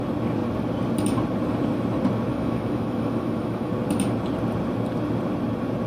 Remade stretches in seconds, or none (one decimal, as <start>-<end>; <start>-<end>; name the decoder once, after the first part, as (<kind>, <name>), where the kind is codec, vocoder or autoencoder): 2.3-3.7 (autoencoder, DAC-VAE)